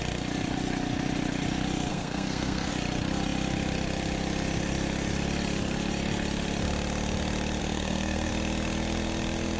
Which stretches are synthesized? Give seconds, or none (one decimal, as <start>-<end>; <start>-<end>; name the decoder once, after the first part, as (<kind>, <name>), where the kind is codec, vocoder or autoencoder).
1.9-2.7 (codec, SNAC); 7.6-8.3